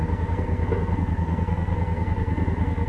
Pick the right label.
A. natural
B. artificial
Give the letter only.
B